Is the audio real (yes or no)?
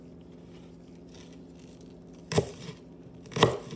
yes